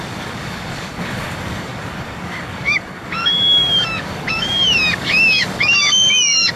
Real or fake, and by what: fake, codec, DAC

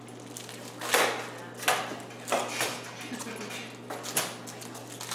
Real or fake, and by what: real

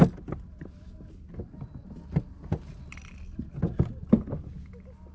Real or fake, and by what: real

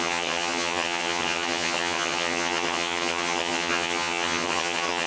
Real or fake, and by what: fake, vocoder, HiFi-GAN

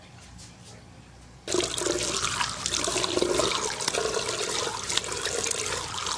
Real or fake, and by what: real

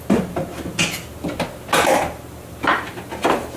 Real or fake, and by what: real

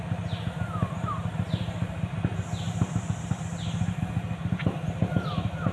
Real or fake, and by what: real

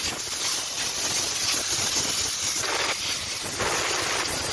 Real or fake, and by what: real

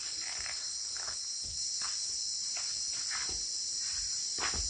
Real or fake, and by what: real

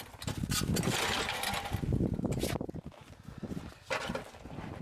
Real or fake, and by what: real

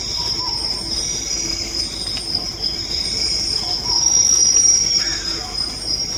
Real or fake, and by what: real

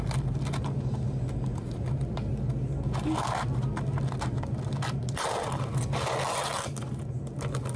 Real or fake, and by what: real